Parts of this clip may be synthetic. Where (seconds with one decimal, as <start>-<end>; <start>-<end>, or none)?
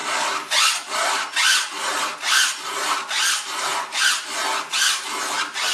none